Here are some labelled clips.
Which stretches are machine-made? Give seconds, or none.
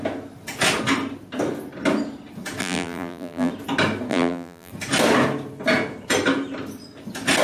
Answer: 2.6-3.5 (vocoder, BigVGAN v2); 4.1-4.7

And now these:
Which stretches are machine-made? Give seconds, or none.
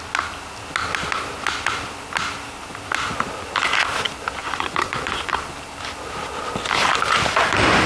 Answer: 4.4-5.3 (vocoder, Vocos)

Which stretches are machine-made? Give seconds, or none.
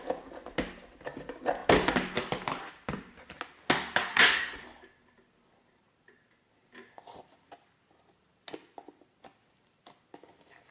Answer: 4.1-4.6 (codec, SNAC)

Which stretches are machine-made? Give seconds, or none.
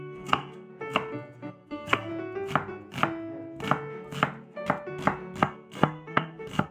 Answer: 0.0-0.7 (codec, SNAC); 1.5-2.1; 5.4-6.7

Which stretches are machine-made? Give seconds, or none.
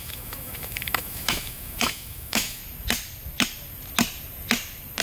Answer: 0.0-2.6 (autoencoder, DAC-VAE)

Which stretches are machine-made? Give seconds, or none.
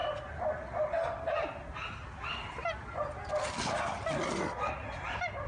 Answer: none